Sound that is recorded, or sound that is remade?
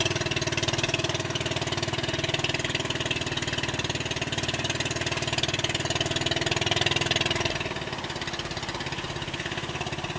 recorded